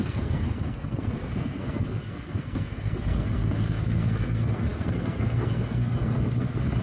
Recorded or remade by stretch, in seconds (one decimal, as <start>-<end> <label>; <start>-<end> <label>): 0.0-6.8 remade